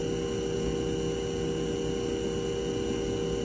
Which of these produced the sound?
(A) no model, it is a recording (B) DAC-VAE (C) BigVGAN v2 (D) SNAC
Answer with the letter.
A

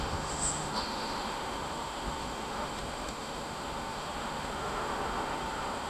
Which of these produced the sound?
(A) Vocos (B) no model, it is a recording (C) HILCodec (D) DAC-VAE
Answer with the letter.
D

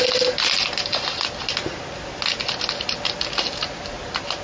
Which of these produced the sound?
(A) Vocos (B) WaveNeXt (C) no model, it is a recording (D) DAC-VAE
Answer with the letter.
C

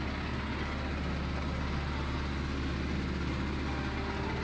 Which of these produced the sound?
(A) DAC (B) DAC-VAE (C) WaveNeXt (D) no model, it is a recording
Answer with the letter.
D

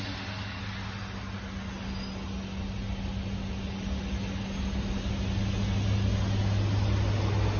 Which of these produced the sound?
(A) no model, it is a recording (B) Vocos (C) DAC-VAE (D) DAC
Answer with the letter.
A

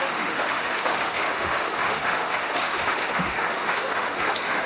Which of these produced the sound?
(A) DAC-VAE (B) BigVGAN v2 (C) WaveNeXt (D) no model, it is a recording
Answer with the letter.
A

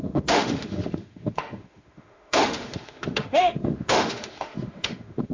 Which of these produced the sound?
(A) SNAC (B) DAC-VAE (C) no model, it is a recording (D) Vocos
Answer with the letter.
B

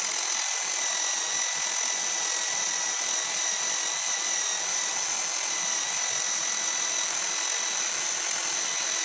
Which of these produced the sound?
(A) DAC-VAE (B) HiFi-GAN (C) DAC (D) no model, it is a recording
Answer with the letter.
D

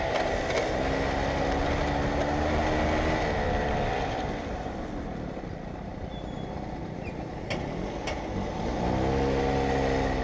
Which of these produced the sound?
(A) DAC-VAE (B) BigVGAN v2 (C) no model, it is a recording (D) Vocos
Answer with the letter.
C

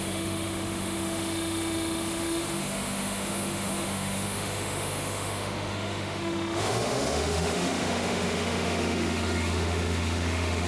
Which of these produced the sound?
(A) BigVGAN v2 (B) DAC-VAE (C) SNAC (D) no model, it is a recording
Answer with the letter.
B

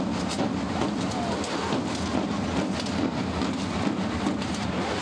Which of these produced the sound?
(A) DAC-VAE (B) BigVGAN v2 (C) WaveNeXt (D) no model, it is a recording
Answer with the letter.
D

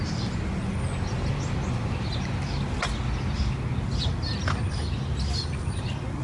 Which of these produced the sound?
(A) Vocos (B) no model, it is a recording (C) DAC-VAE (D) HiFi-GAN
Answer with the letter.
B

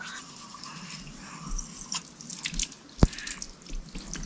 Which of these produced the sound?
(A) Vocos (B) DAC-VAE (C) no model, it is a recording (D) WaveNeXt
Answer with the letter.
C